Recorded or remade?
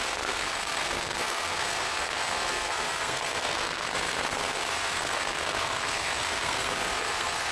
remade